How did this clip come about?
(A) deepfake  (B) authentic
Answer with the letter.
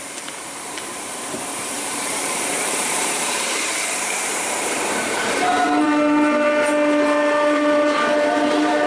A